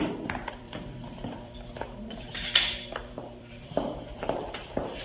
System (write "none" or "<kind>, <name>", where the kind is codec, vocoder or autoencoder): vocoder, BigVGAN v2